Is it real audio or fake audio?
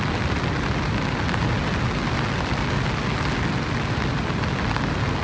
real